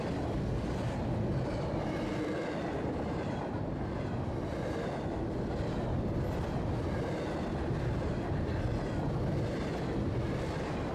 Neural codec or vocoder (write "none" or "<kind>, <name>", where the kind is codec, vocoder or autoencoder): none